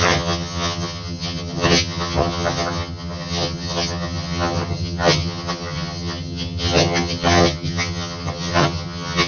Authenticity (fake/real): fake